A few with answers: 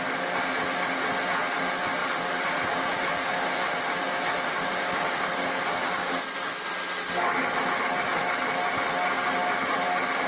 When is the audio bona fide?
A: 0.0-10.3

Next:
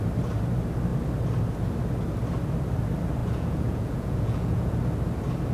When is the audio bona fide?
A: 0.0-3.2; 4.8-5.5